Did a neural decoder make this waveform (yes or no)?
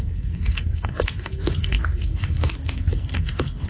yes